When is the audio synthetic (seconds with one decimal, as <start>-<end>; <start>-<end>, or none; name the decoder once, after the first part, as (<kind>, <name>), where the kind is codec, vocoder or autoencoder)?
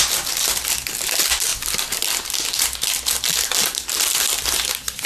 none